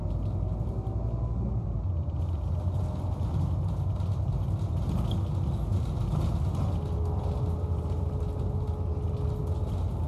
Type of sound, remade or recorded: recorded